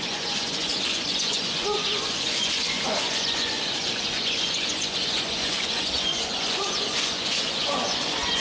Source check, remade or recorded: remade